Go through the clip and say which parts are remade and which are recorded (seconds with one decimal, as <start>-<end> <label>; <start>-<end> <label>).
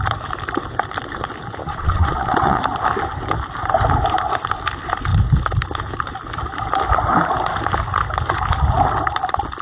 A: 0.0-1.6 recorded; 1.6-2.6 remade; 2.6-9.6 recorded